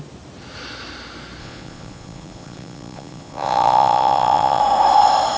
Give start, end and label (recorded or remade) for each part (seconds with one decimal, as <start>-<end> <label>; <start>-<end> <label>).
0.0-1.4 recorded; 1.4-4.6 remade; 4.6-5.4 recorded